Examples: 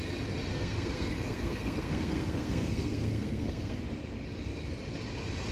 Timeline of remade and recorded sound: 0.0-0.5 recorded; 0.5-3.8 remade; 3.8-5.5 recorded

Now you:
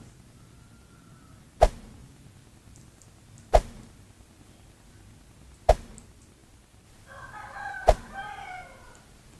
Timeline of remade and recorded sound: 0.0-9.4 recorded

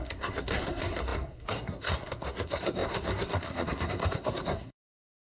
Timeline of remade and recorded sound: 0.0-5.3 remade

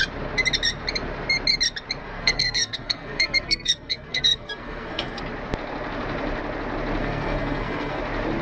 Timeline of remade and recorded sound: 0.0-2.0 recorded; 2.0-5.2 remade; 5.2-7.0 recorded; 7.0-8.0 remade; 8.0-8.4 recorded